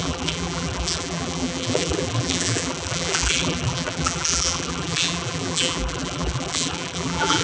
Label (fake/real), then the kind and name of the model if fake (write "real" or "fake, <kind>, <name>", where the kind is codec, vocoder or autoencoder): fake, vocoder, BigVGAN v2